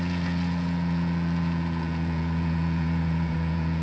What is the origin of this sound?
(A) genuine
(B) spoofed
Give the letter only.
B